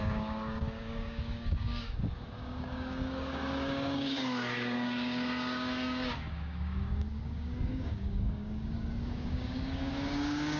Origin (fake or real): fake